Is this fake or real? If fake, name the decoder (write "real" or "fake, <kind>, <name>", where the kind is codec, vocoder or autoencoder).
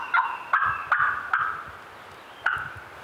real